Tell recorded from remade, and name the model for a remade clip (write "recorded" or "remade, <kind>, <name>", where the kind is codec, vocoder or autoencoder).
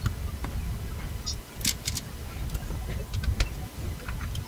recorded